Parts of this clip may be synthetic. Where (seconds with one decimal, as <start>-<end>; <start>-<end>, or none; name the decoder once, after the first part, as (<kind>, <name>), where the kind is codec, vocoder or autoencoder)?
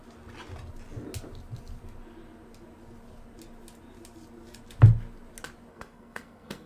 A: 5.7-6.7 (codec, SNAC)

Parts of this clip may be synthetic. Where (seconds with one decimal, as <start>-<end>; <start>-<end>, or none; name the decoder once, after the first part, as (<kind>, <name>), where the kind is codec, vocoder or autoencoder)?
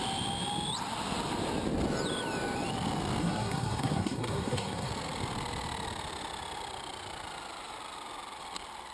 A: 3.2-4.9 (codec, SNAC)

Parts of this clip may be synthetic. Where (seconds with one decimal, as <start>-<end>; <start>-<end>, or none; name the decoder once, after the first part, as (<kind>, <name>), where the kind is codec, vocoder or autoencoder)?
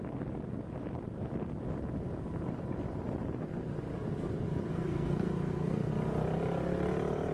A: 4.7-5.9 (codec, SNAC)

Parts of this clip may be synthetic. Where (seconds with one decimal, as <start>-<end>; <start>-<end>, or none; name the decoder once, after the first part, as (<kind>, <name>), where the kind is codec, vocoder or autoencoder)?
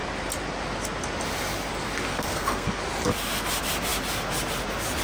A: 2.1-2.8 (codec, SNAC)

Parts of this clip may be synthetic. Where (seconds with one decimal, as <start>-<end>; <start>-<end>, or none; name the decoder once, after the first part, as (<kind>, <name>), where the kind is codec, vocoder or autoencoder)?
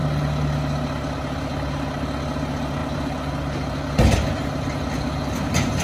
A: none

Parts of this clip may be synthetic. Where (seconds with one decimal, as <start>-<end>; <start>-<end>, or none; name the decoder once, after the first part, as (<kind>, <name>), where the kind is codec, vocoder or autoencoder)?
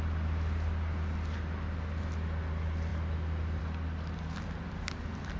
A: none